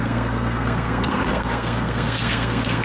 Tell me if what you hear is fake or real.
fake